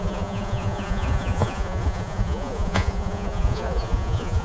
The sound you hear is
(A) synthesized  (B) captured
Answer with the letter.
A